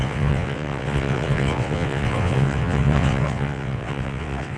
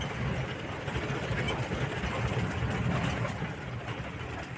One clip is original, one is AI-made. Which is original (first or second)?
second